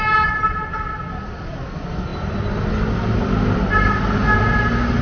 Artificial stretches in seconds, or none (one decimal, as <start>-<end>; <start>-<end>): none